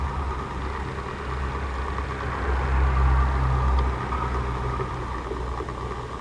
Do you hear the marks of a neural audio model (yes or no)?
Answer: no